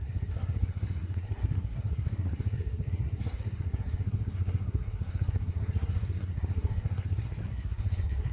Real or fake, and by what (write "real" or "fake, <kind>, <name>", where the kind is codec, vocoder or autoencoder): fake, codec, SNAC